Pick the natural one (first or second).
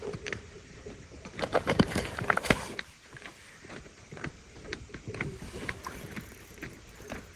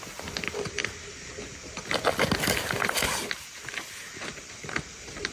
second